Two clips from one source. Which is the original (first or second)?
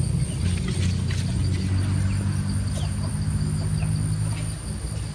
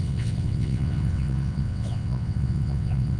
first